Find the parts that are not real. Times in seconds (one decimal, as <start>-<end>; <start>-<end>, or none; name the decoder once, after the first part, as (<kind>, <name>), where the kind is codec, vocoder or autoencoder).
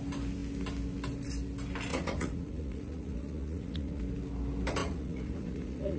1.9-4.0 (vocoder, Vocos); 4.8-6.0